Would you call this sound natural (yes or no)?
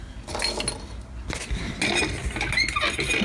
yes